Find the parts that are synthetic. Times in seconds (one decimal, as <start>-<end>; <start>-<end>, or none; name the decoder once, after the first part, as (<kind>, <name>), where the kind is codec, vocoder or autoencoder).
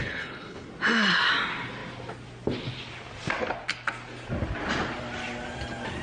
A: 0.0-0.7 (codec, HILCodec)